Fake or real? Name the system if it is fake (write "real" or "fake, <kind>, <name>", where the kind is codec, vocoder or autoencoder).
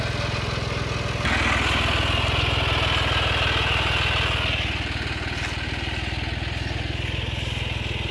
real